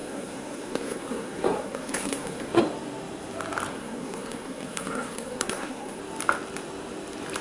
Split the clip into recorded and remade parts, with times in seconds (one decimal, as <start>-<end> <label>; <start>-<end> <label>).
0.0-2.6 remade; 2.6-3.7 recorded; 3.7-6.0 remade; 6.0-7.4 recorded